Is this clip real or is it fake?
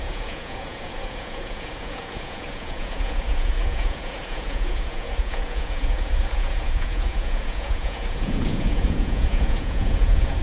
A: fake